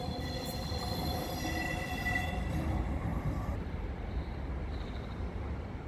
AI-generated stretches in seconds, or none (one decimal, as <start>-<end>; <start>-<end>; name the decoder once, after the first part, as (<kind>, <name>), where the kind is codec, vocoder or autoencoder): 3.1-4.1 (vocoder, BigVGAN v2)